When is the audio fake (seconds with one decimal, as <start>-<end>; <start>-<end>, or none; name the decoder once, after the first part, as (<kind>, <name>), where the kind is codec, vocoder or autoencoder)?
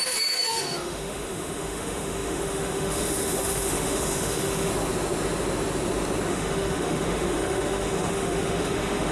0.0-4.7 (autoencoder, DAC-VAE); 6.3-9.1